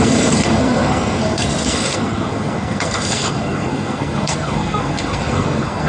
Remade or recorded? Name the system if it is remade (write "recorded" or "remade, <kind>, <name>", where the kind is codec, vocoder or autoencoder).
remade, codec, SNAC